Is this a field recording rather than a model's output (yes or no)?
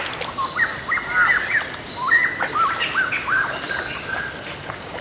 yes